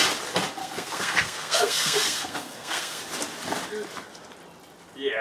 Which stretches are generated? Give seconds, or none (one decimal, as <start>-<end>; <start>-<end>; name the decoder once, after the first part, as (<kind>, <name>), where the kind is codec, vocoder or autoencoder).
0.6-3.0 (codec, SNAC)